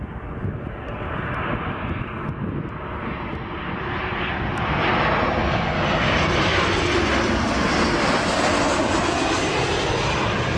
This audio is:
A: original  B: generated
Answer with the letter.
A